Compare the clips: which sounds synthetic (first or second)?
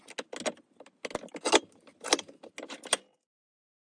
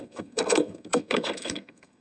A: second